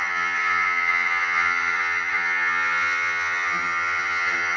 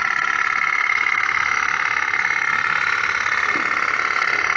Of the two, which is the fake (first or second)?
first